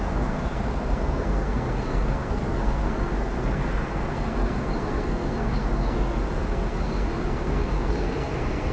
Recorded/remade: remade